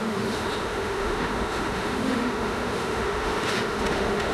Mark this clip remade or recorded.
remade